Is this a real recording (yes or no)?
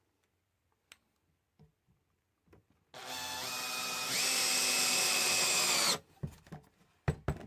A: yes